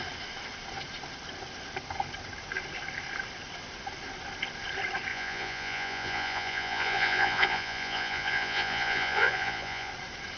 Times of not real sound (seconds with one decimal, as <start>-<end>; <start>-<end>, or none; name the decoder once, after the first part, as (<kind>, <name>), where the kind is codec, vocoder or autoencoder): 5.1-9.9 (vocoder, Vocos)